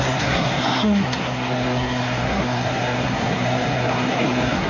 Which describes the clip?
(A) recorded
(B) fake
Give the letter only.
B